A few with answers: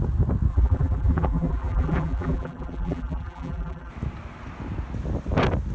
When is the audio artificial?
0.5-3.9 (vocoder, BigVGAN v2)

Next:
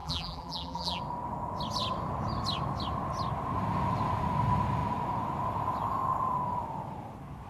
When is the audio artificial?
0.0-1.0 (vocoder, BigVGAN v2)

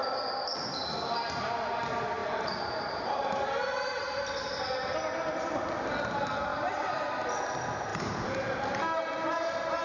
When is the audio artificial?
2.2-4.6 (vocoder, BigVGAN v2); 7.9-9.0

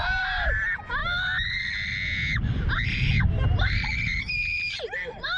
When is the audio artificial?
none